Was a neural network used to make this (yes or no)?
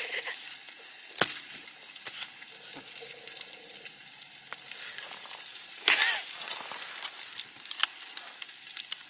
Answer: no